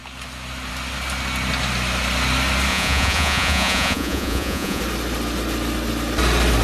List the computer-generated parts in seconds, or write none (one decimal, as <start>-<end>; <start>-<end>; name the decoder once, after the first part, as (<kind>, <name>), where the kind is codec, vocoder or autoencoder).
2.7-4.8 (vocoder, Vocos)